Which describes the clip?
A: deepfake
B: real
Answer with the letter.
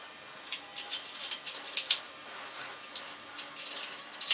B